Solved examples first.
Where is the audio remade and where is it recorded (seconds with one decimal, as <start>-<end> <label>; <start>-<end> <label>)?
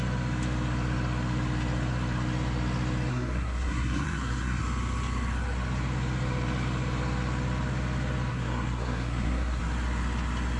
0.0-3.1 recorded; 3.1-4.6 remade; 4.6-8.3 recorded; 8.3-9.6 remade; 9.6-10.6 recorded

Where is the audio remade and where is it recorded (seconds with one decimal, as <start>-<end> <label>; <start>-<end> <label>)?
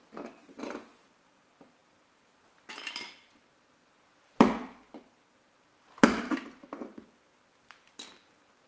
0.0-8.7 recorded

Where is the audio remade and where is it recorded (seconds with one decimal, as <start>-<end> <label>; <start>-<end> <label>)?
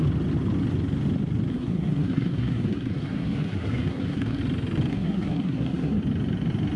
0.0-1.5 recorded; 1.5-4.4 remade; 4.4-4.9 recorded; 4.9-6.0 remade; 6.0-6.8 recorded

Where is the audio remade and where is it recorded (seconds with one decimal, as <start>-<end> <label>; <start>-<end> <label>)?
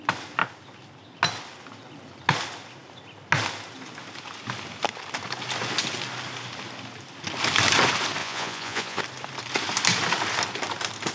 0.0-8.2 recorded; 8.2-9.0 remade; 9.0-11.1 recorded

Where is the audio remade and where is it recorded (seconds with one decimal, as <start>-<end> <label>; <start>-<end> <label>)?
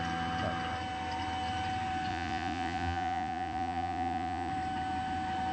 0.0-2.1 recorded; 2.1-4.5 remade; 4.5-5.5 recorded